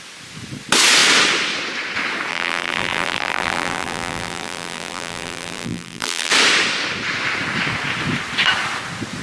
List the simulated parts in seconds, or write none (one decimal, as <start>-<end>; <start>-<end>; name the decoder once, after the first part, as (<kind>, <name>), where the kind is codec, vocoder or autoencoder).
2.3-6.3 (vocoder, BigVGAN v2)

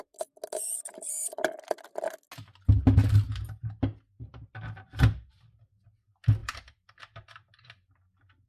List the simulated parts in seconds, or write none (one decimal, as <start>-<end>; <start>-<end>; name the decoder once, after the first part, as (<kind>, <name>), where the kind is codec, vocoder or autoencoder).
1.2-1.8 (vocoder, BigVGAN v2); 6.4-7.0

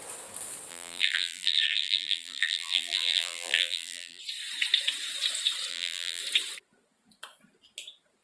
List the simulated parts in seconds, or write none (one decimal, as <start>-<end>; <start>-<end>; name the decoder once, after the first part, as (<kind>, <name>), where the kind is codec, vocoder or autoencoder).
0.7-4.2 (vocoder, BigVGAN v2); 5.7-6.2

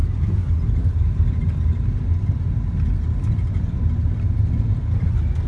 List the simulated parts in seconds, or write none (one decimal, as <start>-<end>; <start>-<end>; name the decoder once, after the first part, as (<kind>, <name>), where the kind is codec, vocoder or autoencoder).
none